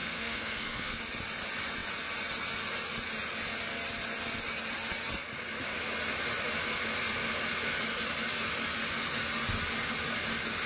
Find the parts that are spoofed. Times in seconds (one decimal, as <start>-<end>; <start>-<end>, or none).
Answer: 0.0-1.0

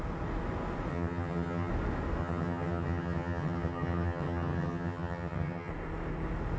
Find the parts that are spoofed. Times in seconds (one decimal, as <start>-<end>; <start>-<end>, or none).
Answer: 0.9-1.7; 2.2-5.7

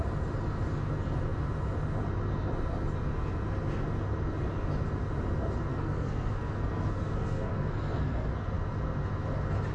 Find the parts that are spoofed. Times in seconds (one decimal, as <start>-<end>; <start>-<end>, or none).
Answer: 5.7-8.3

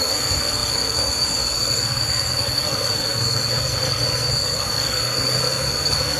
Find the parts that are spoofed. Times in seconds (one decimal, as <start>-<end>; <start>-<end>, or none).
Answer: 0.0-6.2

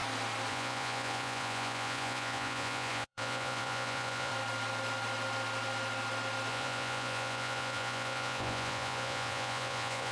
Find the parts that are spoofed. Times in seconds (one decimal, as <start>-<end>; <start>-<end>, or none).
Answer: 0.5-4.3; 6.5-10.1

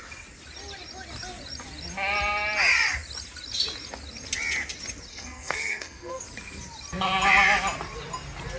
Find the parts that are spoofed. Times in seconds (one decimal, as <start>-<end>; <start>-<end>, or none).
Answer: 5.1-6.2

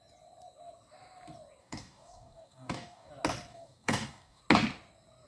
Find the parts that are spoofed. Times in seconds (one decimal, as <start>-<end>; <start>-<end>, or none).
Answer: 1.6-3.1; 3.5-4.4